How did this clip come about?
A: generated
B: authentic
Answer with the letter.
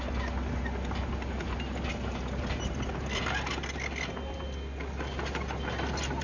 B